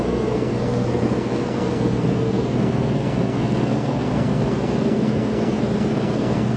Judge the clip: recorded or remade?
remade